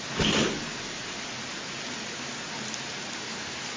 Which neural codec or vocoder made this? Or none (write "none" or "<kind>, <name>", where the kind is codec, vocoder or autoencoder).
none